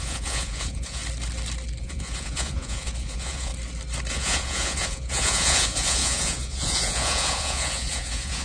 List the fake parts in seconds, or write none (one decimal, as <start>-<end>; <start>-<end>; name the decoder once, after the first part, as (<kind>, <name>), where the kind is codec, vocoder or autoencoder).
0.0-1.0 (vocoder, Vocos); 1.8-3.5; 4.1-8.4